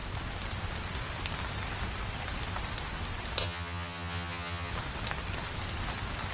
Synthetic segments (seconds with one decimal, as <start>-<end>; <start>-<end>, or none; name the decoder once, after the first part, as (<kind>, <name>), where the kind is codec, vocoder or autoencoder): 3.4-4.7 (vocoder, HiFi-GAN)